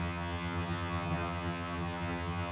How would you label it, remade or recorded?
remade